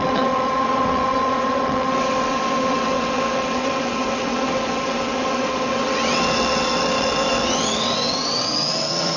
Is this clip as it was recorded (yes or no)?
no